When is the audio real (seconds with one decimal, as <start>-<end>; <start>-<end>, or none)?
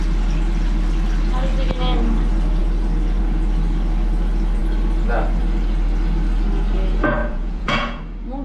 0.0-7.2; 8.0-8.4